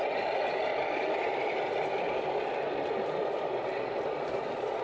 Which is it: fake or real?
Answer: fake